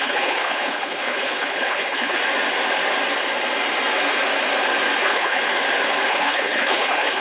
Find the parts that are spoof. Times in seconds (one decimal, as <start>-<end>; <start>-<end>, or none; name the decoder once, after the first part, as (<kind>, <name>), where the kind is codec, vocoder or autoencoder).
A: 0.0-2.2 (codec, HILCodec); 5.0-5.4; 6.1-7.2

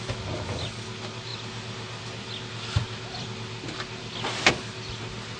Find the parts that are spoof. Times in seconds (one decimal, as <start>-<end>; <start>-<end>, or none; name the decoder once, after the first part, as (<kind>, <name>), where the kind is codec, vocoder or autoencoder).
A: none

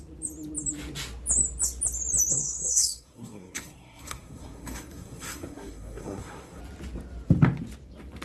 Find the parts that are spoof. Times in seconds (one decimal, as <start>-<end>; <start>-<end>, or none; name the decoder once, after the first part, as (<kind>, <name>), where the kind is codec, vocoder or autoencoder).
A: 2.3-6.6 (codec, SNAC)

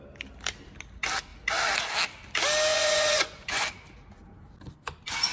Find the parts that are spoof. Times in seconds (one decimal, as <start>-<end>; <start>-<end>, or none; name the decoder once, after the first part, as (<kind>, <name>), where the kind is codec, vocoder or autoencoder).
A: 2.7-3.7 (vocoder, Vocos)